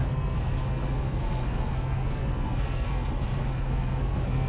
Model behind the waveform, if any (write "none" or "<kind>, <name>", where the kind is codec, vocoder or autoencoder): codec, SNAC